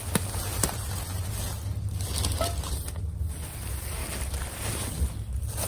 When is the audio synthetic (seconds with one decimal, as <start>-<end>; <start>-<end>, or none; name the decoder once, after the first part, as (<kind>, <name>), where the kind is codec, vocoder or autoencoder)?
0.5-1.3 (vocoder, BigVGAN v2); 4.0-4.9